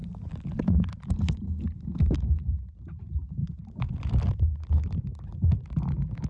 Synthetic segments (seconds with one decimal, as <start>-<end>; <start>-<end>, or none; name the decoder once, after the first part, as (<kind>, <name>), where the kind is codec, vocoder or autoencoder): none

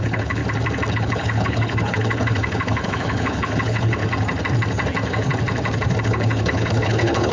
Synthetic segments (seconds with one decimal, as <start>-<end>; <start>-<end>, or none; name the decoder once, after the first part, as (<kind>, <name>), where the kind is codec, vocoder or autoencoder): 0.0-0.4 (codec, HILCodec); 0.9-4.0; 6.0-7.3

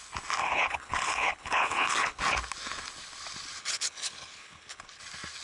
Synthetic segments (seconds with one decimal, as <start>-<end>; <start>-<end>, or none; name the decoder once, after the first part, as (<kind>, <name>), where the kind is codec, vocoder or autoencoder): 0.4-2.2 (codec, HILCodec); 3.6-5.0

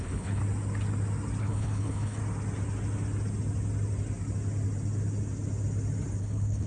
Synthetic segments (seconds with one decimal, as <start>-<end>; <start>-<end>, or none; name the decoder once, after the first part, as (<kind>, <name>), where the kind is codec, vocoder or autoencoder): 0.0-0.4 (codec, HILCodec); 1.4-2.2; 6.2-6.7

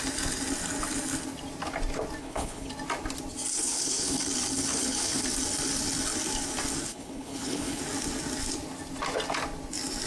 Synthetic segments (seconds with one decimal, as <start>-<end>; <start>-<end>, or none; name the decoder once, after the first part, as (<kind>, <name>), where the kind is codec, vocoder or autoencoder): 2.2-2.7 (codec, HILCodec); 3.5-4.2; 4.7-5.2; 6.9-7.8

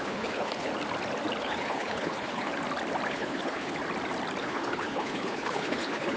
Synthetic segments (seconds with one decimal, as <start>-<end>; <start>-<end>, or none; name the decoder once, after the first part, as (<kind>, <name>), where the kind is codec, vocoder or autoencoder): 0.0-0.7 (codec, HILCodec); 1.4-2.5; 3.1-3.8; 4.4-6.2

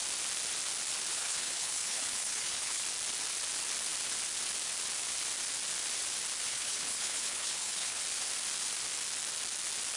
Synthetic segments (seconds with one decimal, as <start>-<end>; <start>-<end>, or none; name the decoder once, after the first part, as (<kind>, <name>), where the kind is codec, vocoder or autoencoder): 1.1-2.8 (codec, HILCodec); 6.5-8.0